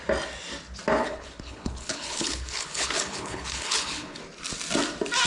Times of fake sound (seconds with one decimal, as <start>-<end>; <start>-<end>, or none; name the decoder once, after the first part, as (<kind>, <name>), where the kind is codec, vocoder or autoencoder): 1.0-4.2 (codec, HILCodec)